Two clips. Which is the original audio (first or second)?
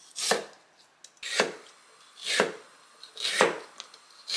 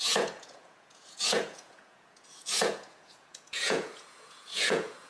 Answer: first